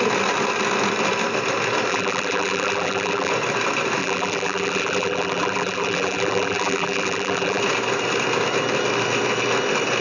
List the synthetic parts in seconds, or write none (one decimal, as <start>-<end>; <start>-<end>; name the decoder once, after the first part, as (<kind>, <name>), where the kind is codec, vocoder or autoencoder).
1.9-3.3 (vocoder, BigVGAN v2); 4.0-7.6